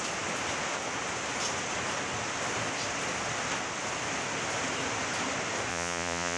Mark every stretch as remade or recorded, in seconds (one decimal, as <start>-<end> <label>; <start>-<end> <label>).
0.0-5.7 recorded; 5.7-6.4 remade